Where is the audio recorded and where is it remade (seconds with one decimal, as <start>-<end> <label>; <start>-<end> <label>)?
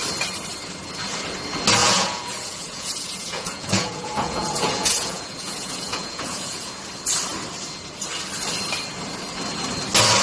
0.0-1.8 recorded; 1.8-6.7 remade; 6.7-10.2 recorded